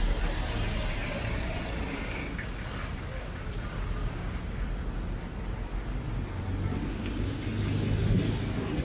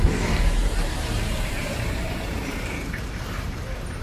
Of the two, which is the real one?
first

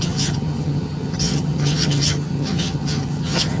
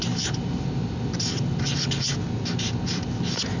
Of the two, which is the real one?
second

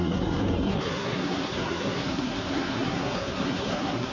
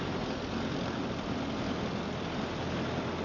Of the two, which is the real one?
second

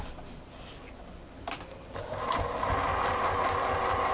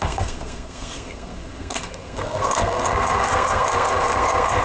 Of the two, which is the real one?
first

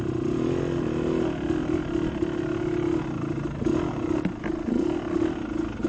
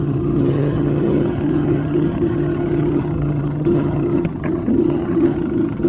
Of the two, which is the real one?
first